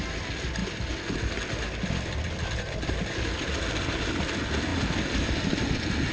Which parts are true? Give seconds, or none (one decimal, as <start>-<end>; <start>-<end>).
0.0-6.1